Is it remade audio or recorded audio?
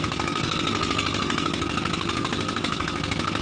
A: remade